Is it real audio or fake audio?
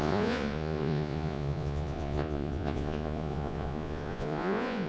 fake